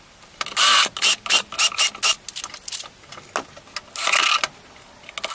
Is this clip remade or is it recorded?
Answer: recorded